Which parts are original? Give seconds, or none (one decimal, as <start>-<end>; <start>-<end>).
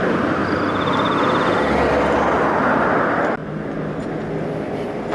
0.0-3.4; 4.1-5.1